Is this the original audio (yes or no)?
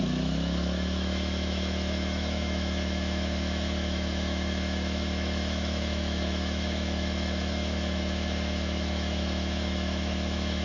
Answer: no